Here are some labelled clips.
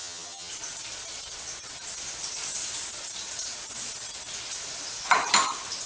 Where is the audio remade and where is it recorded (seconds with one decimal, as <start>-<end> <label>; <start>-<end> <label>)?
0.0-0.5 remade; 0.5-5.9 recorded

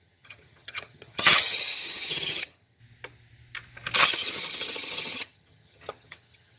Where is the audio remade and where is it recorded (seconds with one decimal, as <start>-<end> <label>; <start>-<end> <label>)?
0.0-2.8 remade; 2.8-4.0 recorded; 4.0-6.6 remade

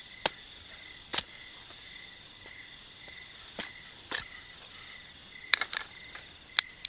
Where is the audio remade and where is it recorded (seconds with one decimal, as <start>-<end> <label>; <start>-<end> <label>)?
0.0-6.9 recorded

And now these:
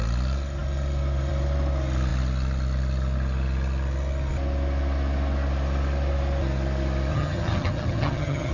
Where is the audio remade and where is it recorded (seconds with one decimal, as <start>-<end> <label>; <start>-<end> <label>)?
0.0-7.1 recorded; 7.1-8.5 remade